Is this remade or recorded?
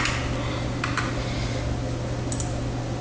recorded